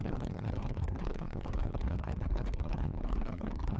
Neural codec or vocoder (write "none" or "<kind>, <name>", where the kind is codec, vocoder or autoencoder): codec, SNAC